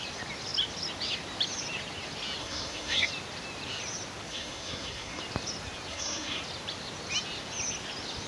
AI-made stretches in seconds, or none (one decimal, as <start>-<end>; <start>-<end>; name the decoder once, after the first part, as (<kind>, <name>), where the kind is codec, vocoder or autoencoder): 2.4-3.1 (codec, SNAC); 4.3-5.2; 5.9-6.4